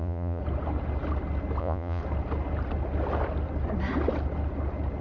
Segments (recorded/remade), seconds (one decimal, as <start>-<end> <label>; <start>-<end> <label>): 0.0-0.4 remade; 0.4-1.6 recorded; 1.6-2.0 remade; 2.0-5.0 recorded